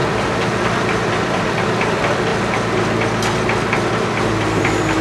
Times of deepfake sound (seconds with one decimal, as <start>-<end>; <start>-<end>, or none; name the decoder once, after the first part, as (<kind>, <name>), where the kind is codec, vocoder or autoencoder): 1.2-2.3 (vocoder, BigVGAN v2); 3.9-5.0